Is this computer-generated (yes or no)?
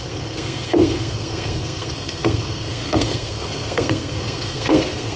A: yes